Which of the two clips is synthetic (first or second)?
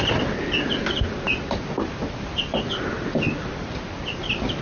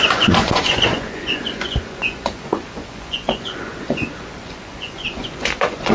second